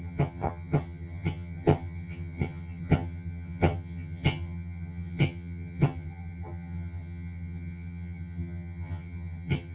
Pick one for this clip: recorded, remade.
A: remade